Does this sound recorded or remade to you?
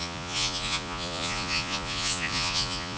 remade